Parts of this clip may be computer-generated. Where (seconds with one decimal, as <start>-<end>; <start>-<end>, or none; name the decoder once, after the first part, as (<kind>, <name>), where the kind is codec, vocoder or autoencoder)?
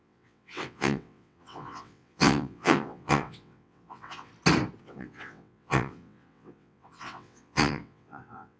0.0-4.3 (vocoder, WaveNeXt); 4.8-8.6